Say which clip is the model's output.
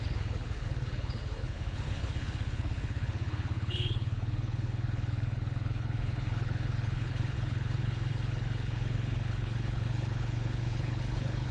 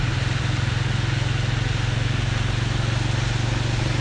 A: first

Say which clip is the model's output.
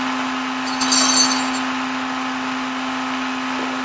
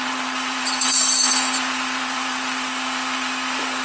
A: second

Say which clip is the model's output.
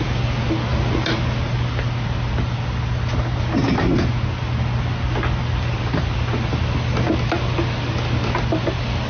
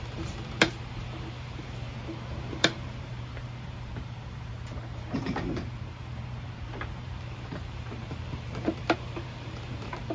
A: second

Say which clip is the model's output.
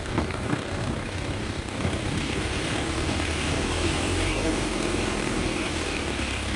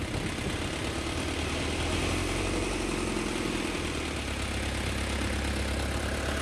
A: first